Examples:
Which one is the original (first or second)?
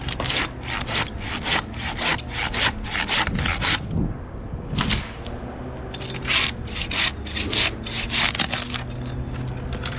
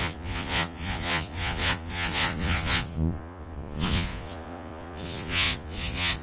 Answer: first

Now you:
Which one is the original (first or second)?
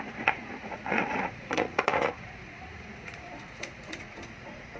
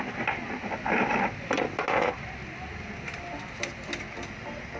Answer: second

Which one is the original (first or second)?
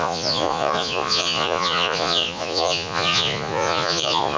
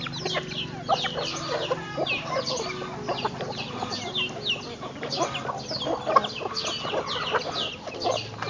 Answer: second